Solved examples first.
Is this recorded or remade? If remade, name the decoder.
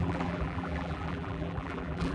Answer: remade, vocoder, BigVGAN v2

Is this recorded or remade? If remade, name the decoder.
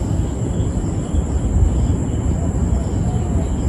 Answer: recorded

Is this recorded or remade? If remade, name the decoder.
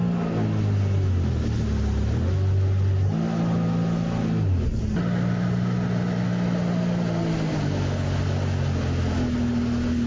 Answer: recorded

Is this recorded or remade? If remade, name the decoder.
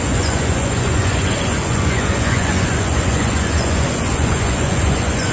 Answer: remade, vocoder, Vocos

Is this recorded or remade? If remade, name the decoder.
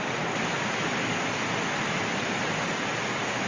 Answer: recorded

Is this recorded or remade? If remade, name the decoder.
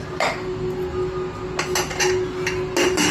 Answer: recorded